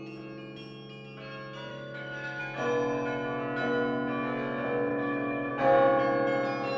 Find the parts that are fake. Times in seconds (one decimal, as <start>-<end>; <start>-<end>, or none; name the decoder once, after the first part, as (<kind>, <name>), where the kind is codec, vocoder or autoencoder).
1.7-2.4 (autoencoder, DAC-VAE); 4.9-5.5